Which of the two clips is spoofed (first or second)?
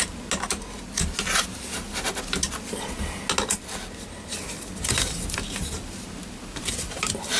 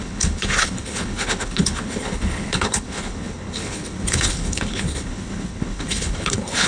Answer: second